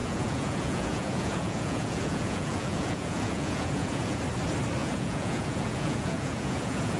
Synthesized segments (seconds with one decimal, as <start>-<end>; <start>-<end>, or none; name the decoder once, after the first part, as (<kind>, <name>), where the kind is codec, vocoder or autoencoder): 0.0-4.2 (vocoder, Vocos); 4.8-7.0